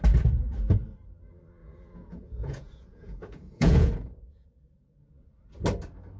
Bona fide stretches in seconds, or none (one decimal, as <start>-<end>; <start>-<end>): 0.0-1.6; 5.1-6.2